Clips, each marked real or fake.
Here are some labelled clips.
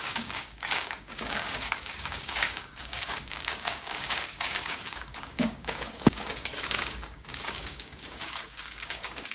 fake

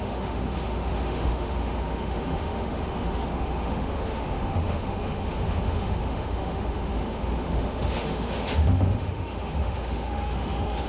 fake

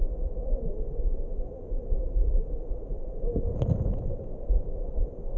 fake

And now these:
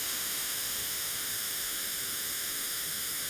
fake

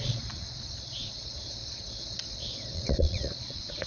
fake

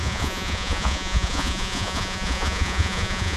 fake